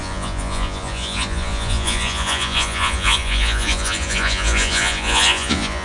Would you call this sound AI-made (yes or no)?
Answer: yes